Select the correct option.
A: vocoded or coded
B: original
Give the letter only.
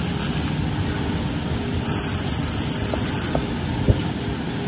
B